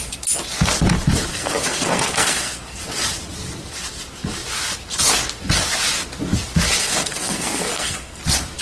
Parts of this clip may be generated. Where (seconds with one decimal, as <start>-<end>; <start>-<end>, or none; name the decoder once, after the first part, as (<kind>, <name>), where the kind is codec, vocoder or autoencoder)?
1.3-2.8 (codec, SNAC); 6.8-8.2